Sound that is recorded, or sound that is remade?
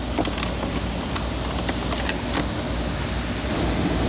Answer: recorded